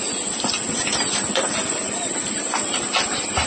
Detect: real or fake fake